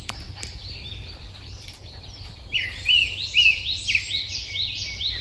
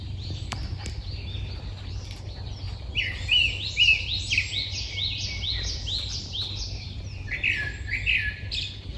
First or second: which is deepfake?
first